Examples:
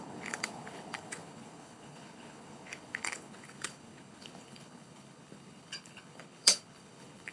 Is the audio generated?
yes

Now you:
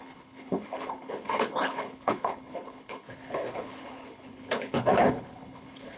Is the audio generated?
yes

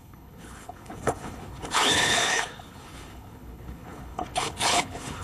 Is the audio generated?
yes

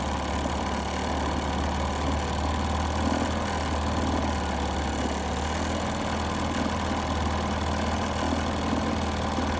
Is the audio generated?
no